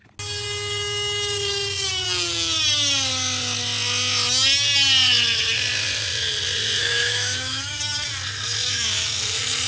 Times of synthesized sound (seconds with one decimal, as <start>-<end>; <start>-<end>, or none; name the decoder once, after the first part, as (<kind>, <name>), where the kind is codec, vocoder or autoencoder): 6.8-7.8 (autoencoder, DAC-VAE)